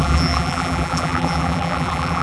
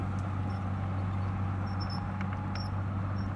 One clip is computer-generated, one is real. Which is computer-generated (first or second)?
first